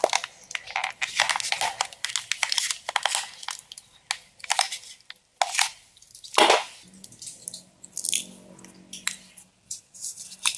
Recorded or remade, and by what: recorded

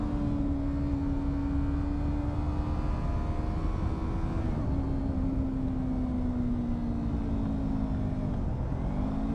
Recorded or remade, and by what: recorded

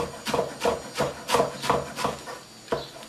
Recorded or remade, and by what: recorded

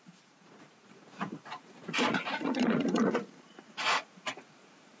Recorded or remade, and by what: remade, vocoder, Vocos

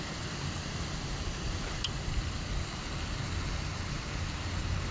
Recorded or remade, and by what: recorded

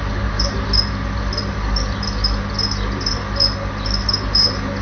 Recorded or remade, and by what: recorded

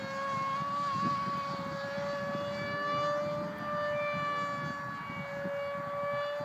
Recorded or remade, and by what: recorded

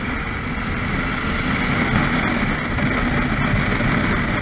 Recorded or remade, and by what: recorded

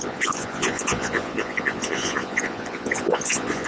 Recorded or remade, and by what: remade, vocoder, Vocos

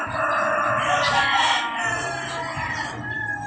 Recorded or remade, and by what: recorded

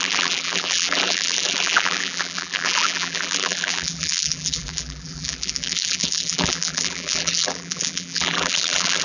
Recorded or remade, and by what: remade, vocoder, BigVGAN v2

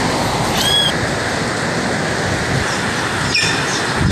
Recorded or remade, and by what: recorded